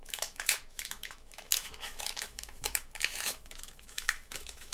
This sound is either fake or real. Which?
fake